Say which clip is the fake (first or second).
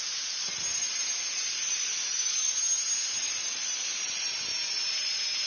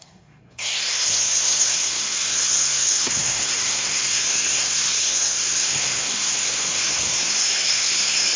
second